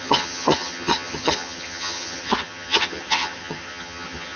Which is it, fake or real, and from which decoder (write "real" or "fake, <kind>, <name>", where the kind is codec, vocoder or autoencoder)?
fake, vocoder, HiFi-GAN